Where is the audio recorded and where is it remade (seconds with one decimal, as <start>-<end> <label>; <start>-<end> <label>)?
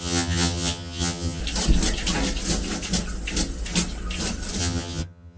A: 0.0-1.4 remade; 1.4-4.6 recorded; 4.6-5.4 remade